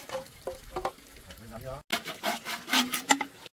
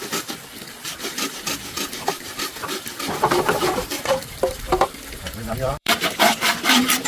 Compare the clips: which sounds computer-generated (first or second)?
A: second